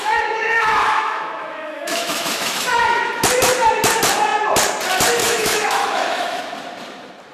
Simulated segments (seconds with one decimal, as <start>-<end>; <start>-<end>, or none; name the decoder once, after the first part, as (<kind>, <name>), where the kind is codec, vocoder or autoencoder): 0.0-3.2 (autoencoder, DAC-VAE); 5.2-6.4